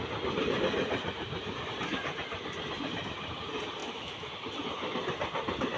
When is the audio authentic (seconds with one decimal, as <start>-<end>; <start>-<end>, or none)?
0.0-3.8; 4.3-5.8